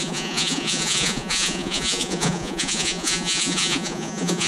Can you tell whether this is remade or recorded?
remade